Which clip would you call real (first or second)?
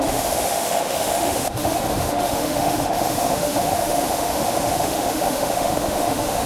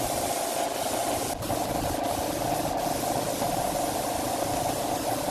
second